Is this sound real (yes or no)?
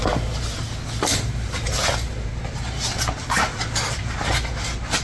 yes